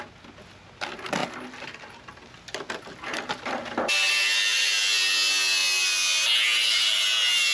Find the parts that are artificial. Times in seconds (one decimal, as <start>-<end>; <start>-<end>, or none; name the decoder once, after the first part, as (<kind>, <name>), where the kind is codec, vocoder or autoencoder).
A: none